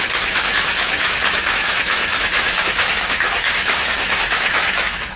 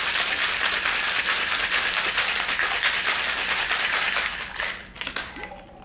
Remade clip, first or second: first